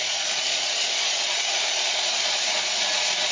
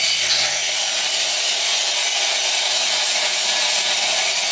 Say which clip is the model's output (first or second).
first